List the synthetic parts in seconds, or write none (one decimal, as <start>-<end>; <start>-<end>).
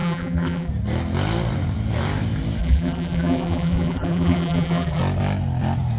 0.0-0.7; 2.6-5.0